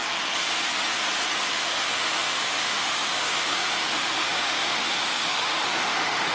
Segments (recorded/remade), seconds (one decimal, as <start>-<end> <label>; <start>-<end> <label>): 0.0-1.5 recorded; 1.5-6.3 remade